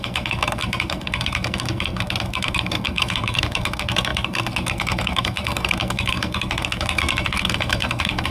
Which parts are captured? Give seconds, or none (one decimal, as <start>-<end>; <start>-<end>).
none